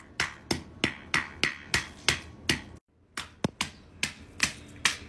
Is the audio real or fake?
real